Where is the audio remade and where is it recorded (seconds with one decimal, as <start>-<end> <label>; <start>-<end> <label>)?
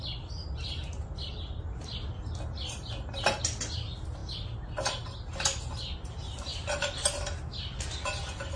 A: 0.0-8.6 recorded